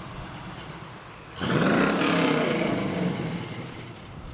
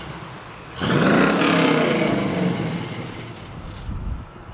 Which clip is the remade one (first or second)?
first